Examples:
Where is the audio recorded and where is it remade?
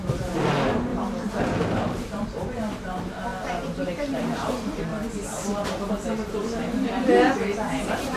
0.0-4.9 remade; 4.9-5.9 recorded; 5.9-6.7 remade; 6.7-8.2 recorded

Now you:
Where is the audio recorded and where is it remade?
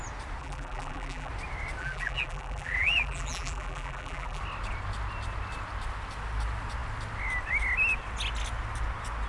0.0-0.4 recorded; 0.4-1.3 remade; 1.3-1.8 recorded; 1.8-4.4 remade; 4.4-9.3 recorded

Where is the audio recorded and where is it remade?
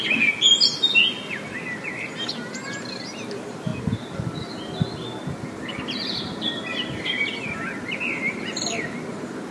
0.0-6.7 recorded; 6.7-7.3 remade; 7.3-9.5 recorded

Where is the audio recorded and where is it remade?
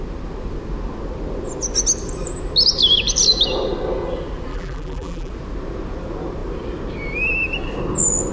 0.0-4.5 recorded; 4.5-5.3 remade; 5.3-8.3 recorded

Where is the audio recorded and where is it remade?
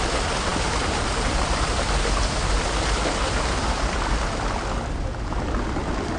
0.0-6.2 recorded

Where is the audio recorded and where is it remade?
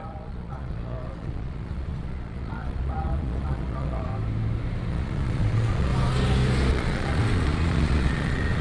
0.0-4.1 remade; 4.1-4.9 recorded; 4.9-5.9 remade; 5.9-6.7 recorded; 6.7-8.6 remade